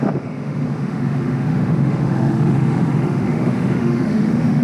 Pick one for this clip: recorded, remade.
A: remade